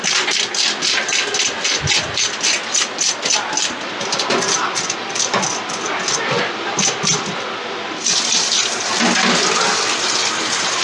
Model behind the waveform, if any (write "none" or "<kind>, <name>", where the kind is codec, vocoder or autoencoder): none